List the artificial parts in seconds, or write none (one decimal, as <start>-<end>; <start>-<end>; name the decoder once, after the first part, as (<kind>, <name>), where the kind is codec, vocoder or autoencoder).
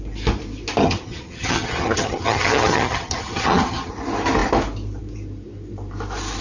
0.8-3.9 (vocoder, HiFi-GAN)